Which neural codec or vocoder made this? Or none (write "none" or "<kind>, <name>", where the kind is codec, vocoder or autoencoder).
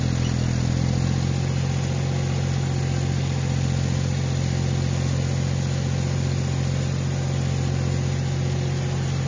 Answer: none